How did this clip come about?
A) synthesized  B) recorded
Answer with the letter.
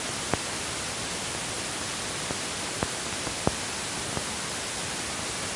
B